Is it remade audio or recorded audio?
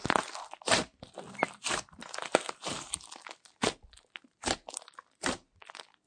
recorded